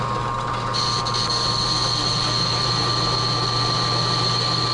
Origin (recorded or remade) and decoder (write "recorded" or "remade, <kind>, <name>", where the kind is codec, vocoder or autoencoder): recorded